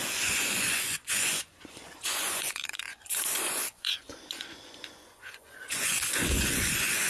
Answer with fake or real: fake